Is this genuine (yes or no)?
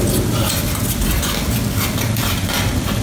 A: yes